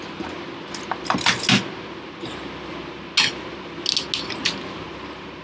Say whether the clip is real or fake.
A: real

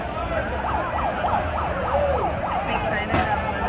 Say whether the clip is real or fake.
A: real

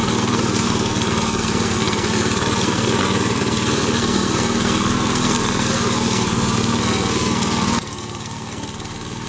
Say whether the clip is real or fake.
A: fake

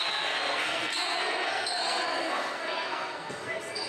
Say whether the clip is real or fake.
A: fake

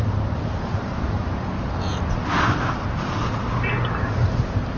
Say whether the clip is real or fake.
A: real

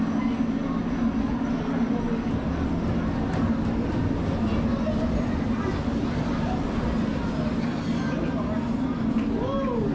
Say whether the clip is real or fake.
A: real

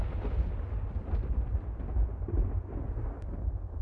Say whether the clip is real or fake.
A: real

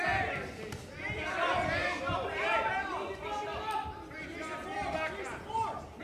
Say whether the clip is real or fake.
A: real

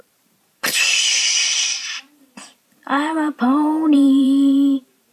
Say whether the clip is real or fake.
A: fake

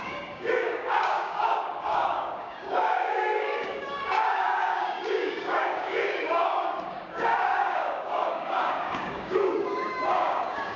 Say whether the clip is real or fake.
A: fake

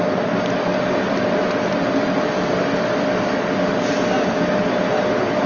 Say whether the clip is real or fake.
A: real